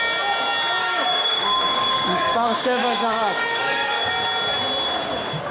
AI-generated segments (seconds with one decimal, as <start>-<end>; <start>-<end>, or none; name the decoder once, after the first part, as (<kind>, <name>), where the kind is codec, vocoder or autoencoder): 0.8-4.1 (codec, DAC)